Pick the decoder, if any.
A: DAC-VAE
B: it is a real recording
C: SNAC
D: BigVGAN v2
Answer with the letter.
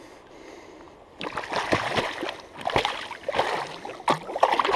B